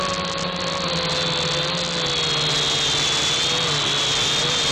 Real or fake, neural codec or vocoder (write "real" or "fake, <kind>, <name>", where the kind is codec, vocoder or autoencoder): real